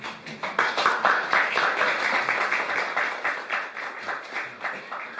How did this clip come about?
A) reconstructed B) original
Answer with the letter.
B